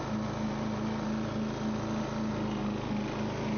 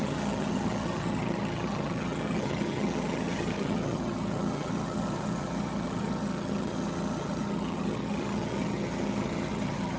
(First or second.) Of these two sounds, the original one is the first